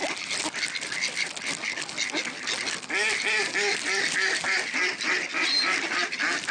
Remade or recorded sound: recorded